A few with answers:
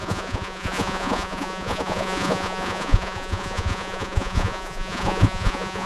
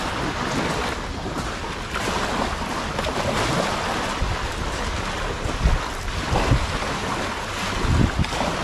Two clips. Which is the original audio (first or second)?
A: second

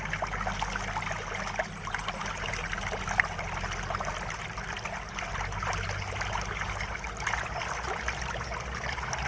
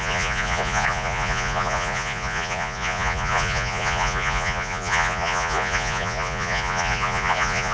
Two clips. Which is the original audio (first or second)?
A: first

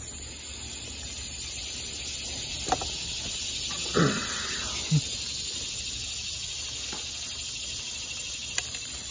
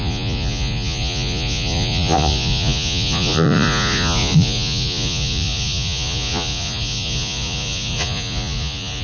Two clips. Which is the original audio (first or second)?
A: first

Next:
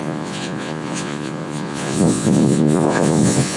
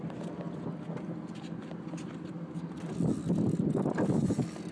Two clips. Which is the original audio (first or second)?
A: second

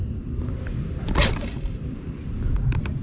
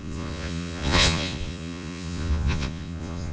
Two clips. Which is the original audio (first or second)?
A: first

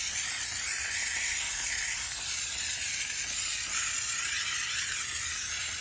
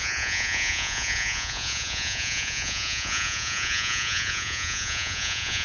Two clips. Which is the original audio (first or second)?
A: first